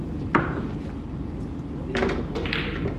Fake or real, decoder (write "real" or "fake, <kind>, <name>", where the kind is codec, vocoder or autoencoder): real